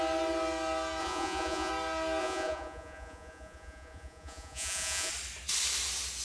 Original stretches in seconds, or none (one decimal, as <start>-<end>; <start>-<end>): 0.0-1.0; 1.7-2.2; 5.1-6.2